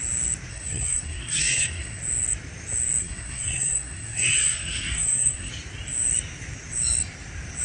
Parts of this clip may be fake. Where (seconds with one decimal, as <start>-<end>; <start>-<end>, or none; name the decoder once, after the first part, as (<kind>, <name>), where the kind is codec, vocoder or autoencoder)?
0.5-2.0 (codec, SNAC); 3.0-5.5